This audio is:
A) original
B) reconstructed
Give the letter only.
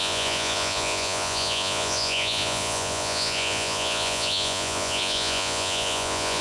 B